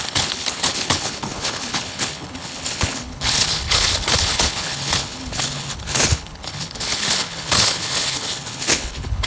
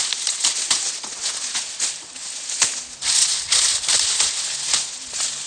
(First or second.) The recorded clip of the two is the second